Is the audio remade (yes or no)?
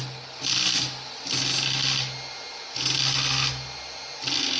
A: no